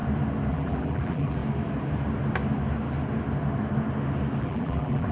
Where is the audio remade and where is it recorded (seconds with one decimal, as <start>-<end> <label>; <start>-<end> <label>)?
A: 0.0-0.5 recorded; 0.5-1.4 remade; 1.4-4.4 recorded; 4.4-5.1 remade